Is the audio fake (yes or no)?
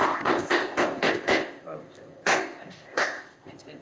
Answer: yes